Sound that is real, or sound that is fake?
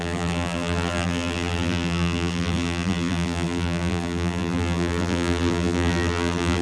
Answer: fake